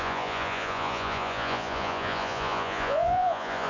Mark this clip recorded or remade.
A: remade